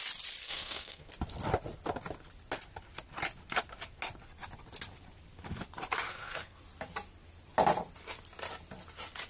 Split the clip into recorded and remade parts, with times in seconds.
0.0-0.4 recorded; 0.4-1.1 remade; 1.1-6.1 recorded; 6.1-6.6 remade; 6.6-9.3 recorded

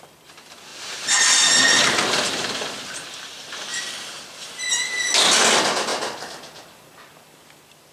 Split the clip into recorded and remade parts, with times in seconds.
0.0-0.7 recorded; 0.7-2.7 remade; 2.7-7.9 recorded

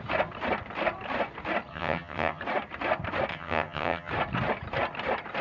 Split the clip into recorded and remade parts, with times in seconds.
0.0-1.7 recorded; 1.7-2.4 remade; 2.4-3.3 recorded; 3.3-4.1 remade; 4.1-5.4 recorded

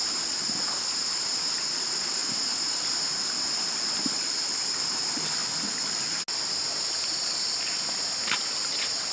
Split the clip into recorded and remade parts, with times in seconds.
0.0-9.1 recorded

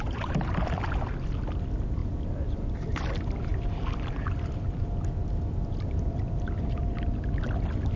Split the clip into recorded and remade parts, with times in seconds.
0.0-8.0 recorded